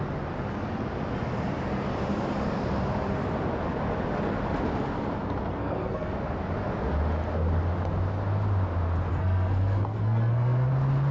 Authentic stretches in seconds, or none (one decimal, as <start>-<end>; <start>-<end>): 0.0-5.5; 6.1-9.1; 10.7-11.1